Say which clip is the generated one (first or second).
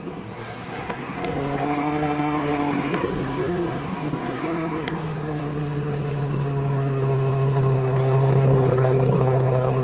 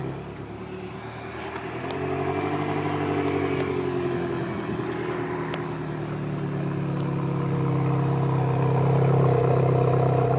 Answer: first